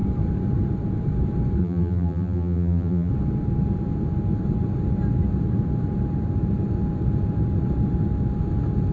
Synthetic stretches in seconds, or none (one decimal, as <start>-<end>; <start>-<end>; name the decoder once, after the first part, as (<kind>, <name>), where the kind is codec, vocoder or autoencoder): 1.6-3.1 (vocoder, BigVGAN v2)